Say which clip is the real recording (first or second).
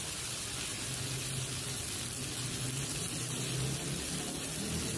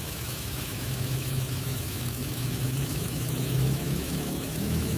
first